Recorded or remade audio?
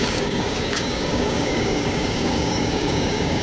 remade